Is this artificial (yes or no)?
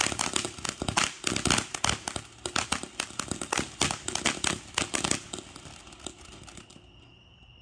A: no